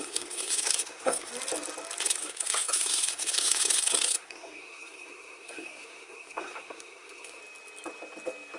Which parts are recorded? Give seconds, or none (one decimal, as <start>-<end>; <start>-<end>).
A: 1.3-2.0; 7.4-8.6